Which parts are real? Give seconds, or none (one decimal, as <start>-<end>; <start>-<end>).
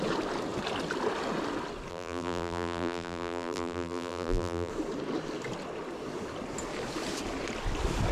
0.0-1.9; 4.7-8.1